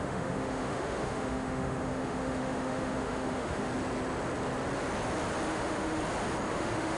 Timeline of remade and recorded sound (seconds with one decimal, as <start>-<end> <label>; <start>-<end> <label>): 0.0-3.7 remade; 3.7-5.5 recorded; 5.5-6.0 remade; 6.0-6.5 recorded; 6.5-7.0 remade